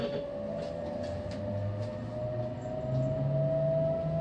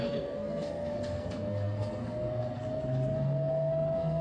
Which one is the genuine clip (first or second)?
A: first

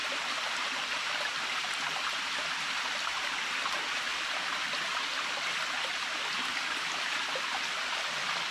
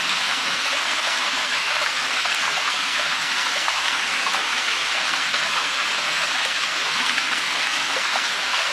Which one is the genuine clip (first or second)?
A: first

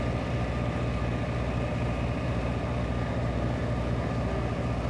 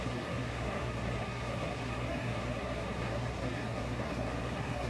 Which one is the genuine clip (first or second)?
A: first